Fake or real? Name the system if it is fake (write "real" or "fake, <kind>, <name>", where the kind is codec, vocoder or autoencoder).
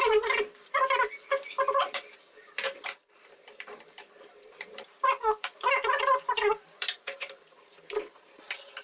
fake, vocoder, BigVGAN v2